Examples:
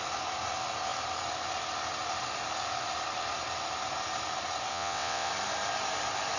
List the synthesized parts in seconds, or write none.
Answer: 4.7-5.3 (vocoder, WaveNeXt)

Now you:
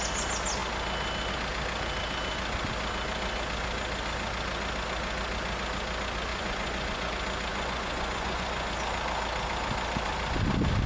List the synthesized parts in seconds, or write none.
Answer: 6.3-7.1 (vocoder, Vocos); 7.5-8.7

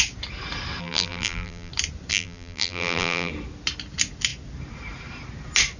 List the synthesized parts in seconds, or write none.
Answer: 0.8-1.7 (vocoder, BigVGAN v2); 2.1-3.3

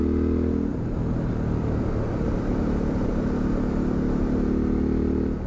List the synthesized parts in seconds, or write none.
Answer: 0.7-1.3 (vocoder, BigVGAN v2)

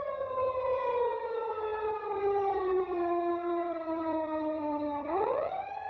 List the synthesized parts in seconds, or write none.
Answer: 0.0-5.9 (vocoder, HiFi-GAN)

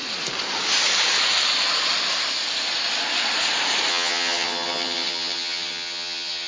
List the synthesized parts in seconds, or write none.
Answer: 3.9-6.5 (vocoder, HiFi-GAN)

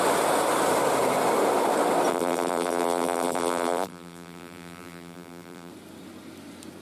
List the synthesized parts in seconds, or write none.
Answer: 2.1-5.7 (vocoder, BigVGAN v2)

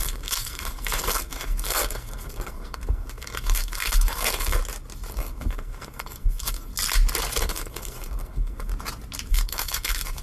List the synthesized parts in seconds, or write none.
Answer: 0.0-4.6 (codec, SNAC); 5.1-6.7; 7.4-8.7; 9.3-10.2